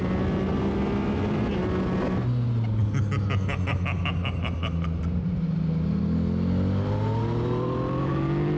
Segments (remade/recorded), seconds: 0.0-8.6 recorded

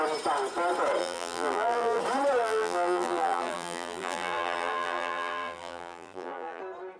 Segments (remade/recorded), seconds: 0.0-1.0 recorded; 1.0-2.0 remade; 2.0-2.4 recorded; 2.4-6.6 remade; 6.6-7.0 recorded

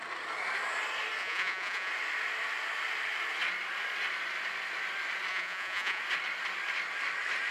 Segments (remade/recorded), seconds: 0.0-1.2 recorded; 1.2-1.9 remade; 1.9-5.3 recorded; 5.3-6.0 remade; 6.0-7.5 recorded

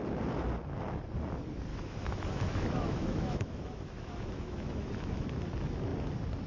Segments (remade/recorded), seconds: 0.0-1.7 recorded; 1.7-5.3 remade; 5.3-6.5 recorded

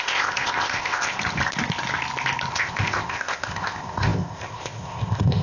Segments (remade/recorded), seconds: 0.0-1.2 remade; 1.2-2.5 recorded; 2.5-5.4 remade

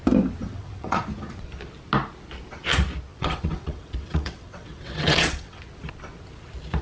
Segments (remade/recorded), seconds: 0.0-0.4 recorded; 0.4-1.0 remade; 1.0-3.1 recorded; 3.1-5.6 remade; 5.6-6.8 recorded

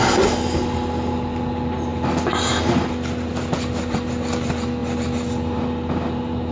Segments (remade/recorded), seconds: 0.0-1.9 recorded; 1.9-2.6 remade; 2.6-4.8 recorded; 4.8-5.3 remade; 5.3-6.5 recorded